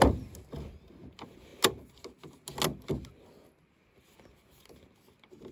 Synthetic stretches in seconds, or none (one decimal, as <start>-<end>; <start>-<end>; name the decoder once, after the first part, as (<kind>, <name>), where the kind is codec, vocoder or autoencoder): none